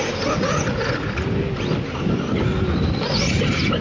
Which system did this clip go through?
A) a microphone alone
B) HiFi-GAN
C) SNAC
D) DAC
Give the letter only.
A